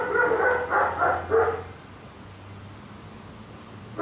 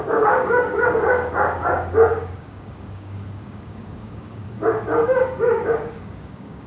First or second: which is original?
first